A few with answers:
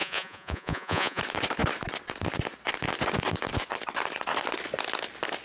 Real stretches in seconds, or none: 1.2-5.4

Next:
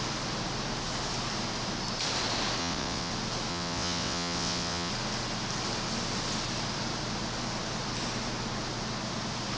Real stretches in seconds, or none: 0.0-2.6; 3.1-3.5; 4.9-9.6

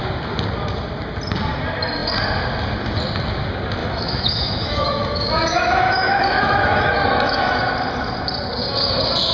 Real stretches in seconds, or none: 0.0-3.8; 7.7-9.3

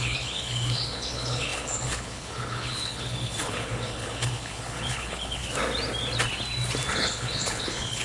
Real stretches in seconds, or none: 5.4-6.9

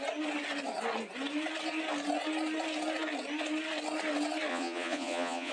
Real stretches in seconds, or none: 0.0-4.5